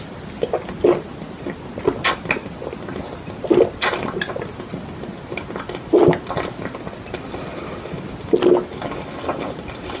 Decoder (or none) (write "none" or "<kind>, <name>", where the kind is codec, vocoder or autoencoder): none